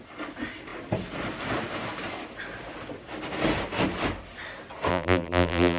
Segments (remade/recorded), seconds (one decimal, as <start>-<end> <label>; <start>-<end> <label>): 0.0-4.9 recorded; 4.9-5.8 remade